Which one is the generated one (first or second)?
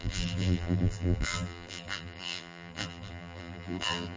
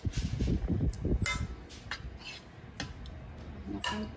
first